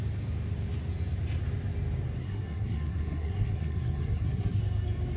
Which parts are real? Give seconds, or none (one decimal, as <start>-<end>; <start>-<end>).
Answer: 0.0-2.2; 4.6-5.2